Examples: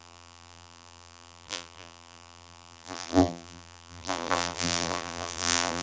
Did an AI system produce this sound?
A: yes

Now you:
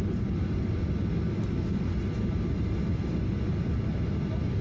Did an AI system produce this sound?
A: no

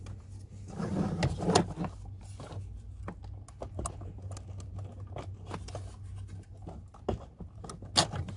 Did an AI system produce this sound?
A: no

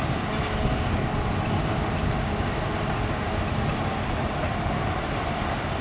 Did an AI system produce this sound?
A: no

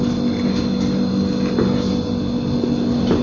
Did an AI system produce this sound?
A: no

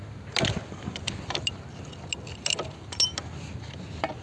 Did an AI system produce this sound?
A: no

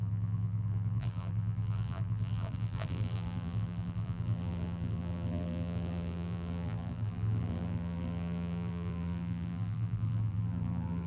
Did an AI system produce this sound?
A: yes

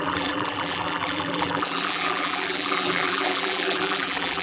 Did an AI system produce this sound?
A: yes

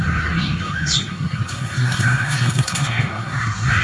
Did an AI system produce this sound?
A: yes